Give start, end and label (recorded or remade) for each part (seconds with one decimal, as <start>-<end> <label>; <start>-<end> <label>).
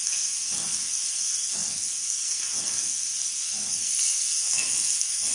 0.0-5.3 remade